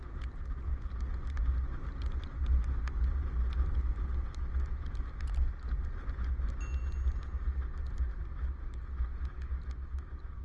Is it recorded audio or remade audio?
recorded